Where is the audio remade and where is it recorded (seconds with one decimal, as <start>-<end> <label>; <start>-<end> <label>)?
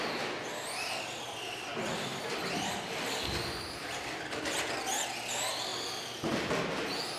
0.0-7.2 recorded